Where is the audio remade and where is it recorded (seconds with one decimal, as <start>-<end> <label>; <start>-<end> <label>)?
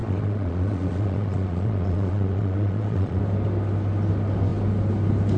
0.0-3.2 remade; 3.2-5.4 recorded